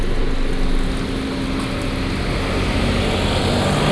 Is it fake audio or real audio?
real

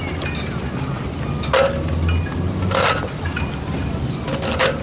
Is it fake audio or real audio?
real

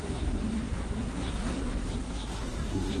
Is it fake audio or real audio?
fake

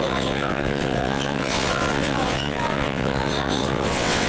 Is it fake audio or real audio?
fake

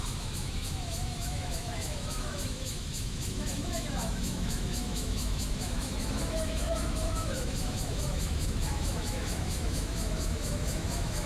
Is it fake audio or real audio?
fake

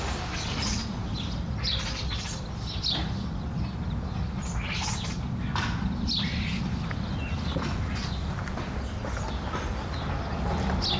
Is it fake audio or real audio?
real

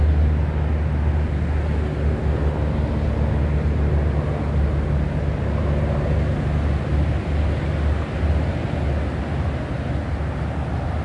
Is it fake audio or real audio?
real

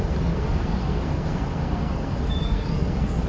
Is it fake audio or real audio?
fake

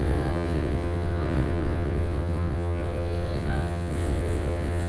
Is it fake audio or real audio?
fake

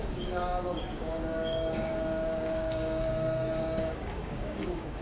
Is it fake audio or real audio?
fake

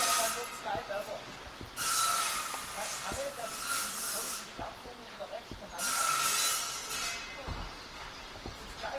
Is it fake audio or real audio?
real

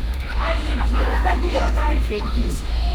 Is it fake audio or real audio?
fake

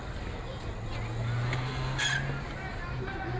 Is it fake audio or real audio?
real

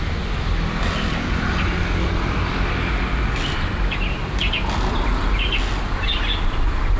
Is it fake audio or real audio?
real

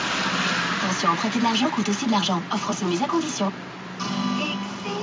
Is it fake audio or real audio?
real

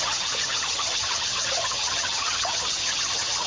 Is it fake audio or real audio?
fake